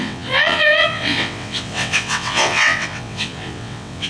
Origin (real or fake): fake